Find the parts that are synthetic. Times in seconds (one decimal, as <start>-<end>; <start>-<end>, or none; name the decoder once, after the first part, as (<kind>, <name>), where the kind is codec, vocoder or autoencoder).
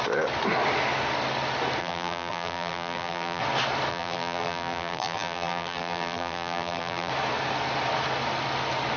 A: 1.8-3.4 (vocoder, BigVGAN v2); 3.9-7.1